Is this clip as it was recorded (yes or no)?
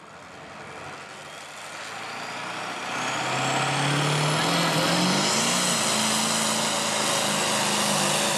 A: yes